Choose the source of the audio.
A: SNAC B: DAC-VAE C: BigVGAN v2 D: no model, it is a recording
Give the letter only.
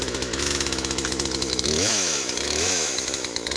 B